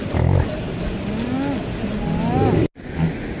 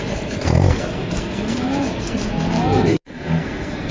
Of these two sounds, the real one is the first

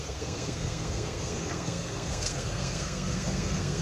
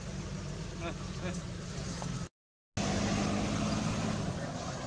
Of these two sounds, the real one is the second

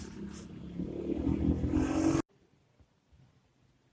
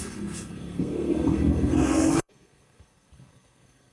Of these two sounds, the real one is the first